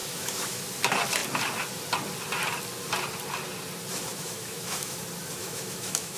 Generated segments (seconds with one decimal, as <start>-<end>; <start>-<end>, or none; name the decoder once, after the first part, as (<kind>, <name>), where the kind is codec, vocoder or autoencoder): 0.0-0.6 (autoencoder, DAC-VAE); 4.1-5.0; 5.4-6.2